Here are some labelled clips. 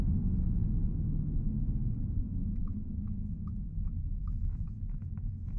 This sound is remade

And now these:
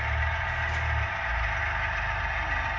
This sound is recorded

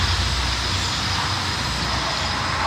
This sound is recorded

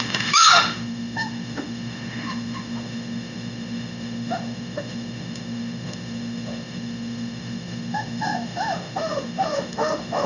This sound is remade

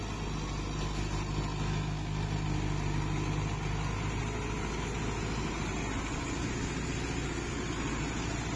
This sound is recorded